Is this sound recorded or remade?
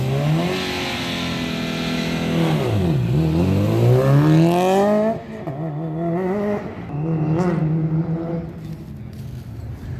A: recorded